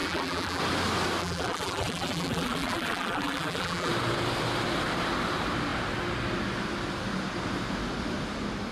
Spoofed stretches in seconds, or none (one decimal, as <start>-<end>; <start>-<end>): 0.0-0.6; 1.2-3.9